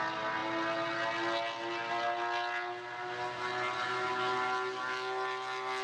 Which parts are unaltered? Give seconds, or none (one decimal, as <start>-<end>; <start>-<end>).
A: 0.0-5.8